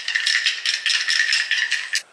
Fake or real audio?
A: real